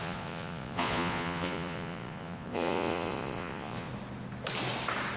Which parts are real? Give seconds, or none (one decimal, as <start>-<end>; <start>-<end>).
3.9-5.2